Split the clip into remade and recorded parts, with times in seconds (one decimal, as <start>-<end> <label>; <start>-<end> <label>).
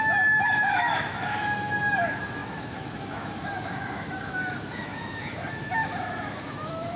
0.0-7.0 remade